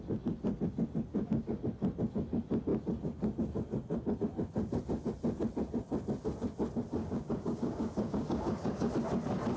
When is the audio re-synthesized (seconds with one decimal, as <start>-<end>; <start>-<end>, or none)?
1.1-1.6; 7.0-8.9